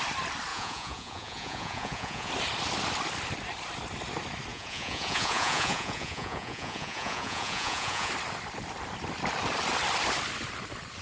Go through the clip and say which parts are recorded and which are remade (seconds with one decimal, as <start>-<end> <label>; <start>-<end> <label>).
0.0-0.5 recorded; 0.5-2.3 remade; 2.3-4.5 recorded; 4.5-8.1 remade; 8.1-11.0 recorded